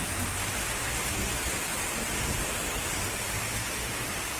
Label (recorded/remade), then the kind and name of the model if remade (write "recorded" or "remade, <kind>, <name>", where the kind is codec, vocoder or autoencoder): recorded